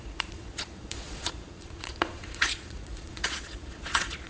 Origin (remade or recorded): remade